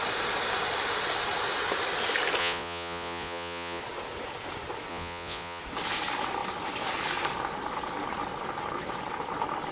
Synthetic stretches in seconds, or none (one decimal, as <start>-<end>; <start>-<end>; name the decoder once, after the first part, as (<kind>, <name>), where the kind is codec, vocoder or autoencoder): 2.4-3.8 (vocoder, Vocos); 4.9-5.6